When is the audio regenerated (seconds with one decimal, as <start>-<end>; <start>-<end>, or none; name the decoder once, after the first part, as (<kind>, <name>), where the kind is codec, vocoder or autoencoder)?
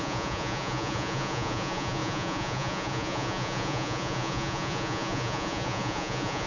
0.0-6.5 (vocoder, Vocos)